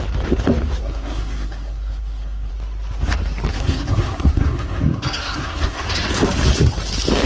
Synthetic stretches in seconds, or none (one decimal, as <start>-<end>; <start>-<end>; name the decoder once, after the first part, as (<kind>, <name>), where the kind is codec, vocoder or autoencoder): 0.8-2.5 (codec, SNAC); 3.5-5.8